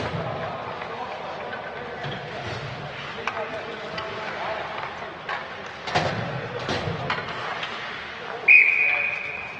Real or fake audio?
real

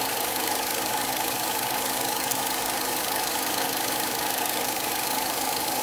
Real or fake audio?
fake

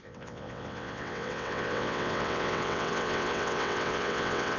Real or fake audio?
fake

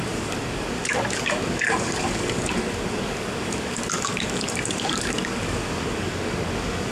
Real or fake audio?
fake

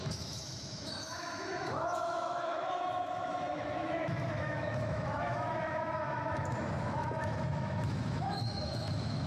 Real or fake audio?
fake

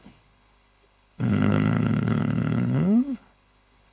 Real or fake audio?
fake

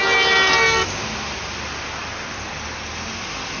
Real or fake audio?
real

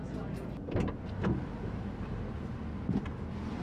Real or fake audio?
real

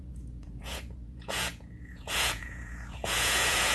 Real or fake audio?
fake